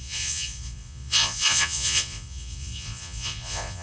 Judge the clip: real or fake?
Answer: fake